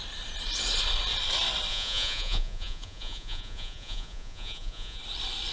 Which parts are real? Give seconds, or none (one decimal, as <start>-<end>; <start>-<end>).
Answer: 0.0-1.7; 5.0-5.5